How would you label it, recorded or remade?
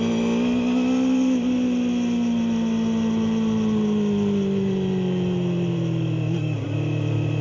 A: recorded